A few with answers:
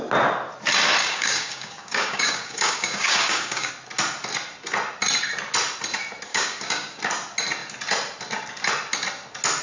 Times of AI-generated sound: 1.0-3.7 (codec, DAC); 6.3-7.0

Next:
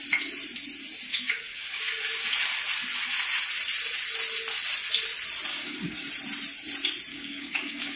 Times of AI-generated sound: 1.1-2.0 (codec, DAC); 5.5-6.1; 7.1-8.0

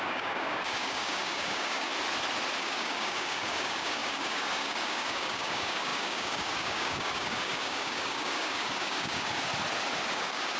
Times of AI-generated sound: 0.0-1.9 (codec, DAC); 2.6-9.5; 10.1-10.6

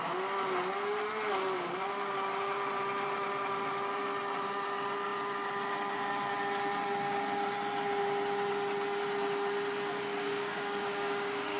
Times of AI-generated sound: 9.9-11.6 (codec, DAC)

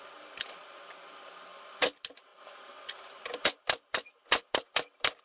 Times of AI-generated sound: none

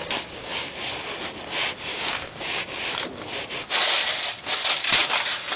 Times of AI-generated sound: 0.0-0.6 (codec, DAC); 1.9-2.8